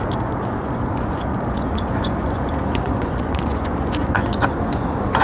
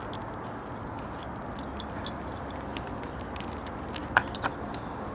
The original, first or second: second